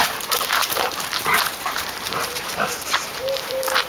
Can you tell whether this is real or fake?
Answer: fake